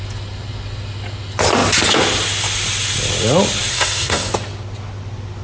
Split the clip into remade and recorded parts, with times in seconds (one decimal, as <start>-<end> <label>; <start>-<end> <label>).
0.0-3.7 recorded; 3.7-4.3 remade; 4.3-5.4 recorded